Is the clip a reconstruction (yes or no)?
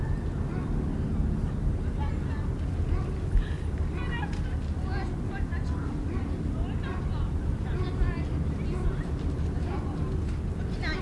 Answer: no